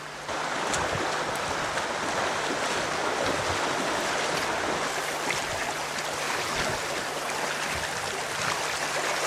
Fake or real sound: real